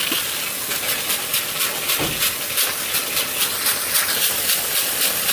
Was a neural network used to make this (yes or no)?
no